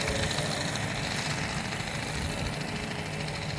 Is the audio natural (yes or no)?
yes